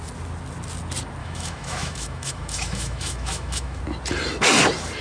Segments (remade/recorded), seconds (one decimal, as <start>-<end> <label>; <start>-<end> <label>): 0.0-1.2 recorded; 1.2-3.8 remade; 3.8-5.0 recorded